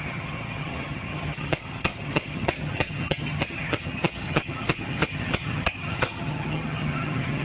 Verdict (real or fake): fake